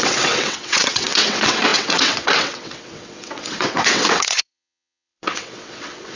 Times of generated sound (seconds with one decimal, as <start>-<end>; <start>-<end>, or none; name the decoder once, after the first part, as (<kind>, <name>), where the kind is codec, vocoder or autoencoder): 0.0-6.2 (vocoder, WaveNeXt)